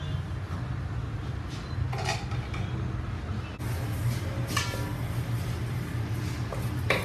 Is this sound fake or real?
real